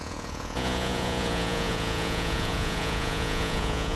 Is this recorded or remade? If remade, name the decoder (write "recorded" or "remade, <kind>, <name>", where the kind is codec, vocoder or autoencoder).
remade, vocoder, Vocos